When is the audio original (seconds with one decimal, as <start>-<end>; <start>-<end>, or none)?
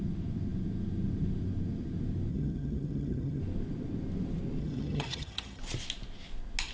0.0-2.3; 3.4-4.6; 5.6-6.7